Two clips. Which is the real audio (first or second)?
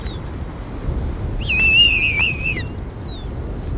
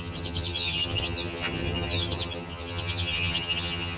first